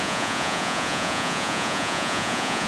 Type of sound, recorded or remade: remade